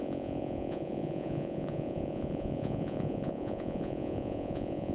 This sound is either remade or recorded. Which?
remade